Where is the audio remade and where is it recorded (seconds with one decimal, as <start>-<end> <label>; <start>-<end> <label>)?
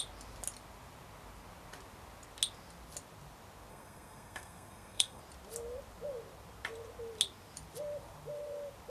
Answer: 0.0-3.7 recorded; 3.7-5.2 remade; 5.2-8.9 recorded